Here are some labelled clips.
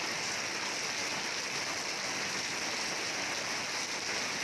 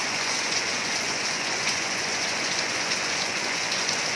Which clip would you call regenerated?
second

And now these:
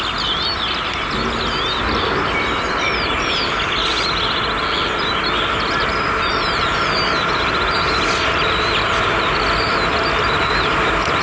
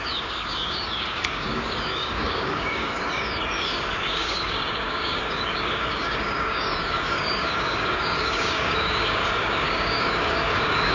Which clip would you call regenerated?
second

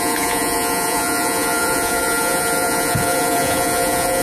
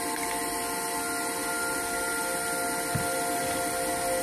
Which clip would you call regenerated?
first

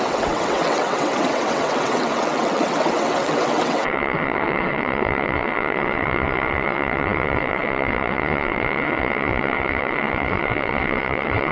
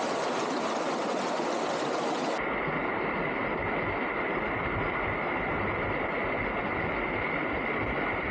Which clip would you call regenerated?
first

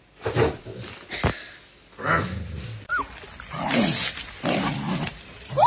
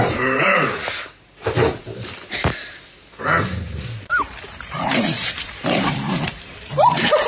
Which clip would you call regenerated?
second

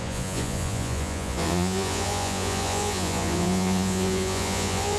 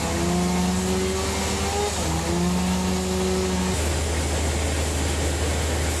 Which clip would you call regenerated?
first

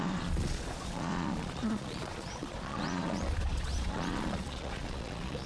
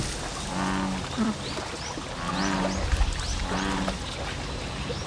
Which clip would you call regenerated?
first